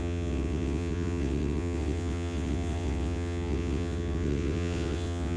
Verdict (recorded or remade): remade